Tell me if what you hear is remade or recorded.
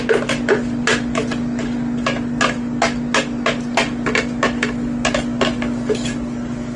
recorded